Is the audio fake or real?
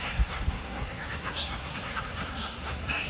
fake